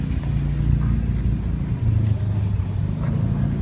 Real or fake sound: real